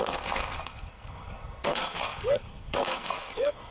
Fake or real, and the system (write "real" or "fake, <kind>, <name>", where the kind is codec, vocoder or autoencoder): fake, codec, SNAC